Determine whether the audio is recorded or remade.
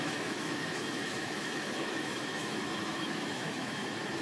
remade